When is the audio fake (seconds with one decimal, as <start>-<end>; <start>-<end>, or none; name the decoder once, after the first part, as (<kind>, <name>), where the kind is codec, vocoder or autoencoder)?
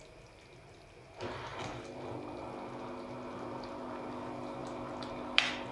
0.5-1.1 (vocoder, BigVGAN v2)